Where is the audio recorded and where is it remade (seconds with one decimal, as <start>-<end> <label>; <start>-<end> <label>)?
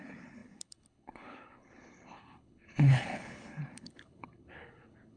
0.0-5.2 remade